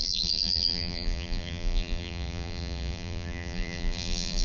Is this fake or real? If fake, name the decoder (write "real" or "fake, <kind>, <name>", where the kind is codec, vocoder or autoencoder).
fake, vocoder, BigVGAN v2